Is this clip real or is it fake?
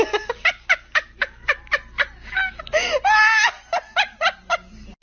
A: real